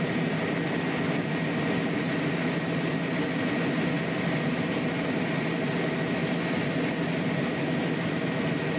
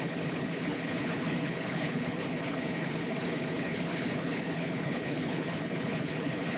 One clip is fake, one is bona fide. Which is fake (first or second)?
second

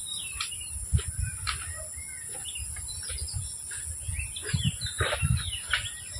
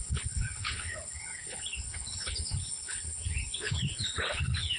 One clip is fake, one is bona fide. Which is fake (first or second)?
second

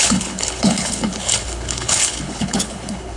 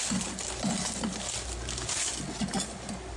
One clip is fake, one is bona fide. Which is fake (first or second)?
first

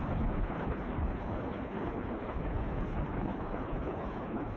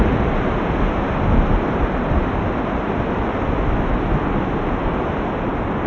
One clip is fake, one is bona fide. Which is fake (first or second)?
first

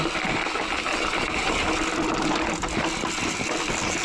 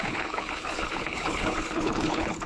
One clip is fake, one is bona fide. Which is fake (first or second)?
second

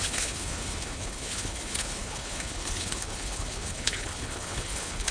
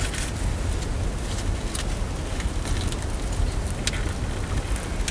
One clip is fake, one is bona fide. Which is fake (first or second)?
first